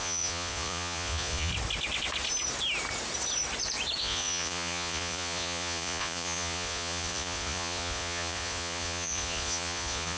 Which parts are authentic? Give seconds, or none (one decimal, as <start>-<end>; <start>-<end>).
1.5-4.0